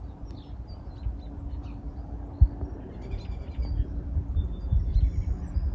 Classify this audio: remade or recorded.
recorded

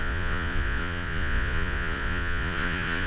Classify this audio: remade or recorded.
remade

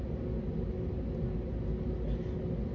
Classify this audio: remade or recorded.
recorded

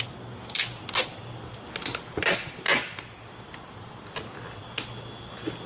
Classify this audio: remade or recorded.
recorded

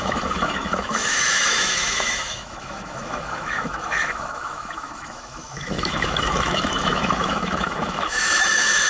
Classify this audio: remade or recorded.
remade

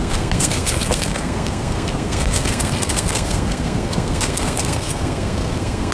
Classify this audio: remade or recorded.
remade